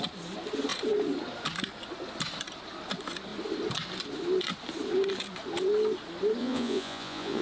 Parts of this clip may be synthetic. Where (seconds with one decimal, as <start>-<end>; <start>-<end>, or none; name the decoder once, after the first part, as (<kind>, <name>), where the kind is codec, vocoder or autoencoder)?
6.4-7.4 (vocoder, Vocos)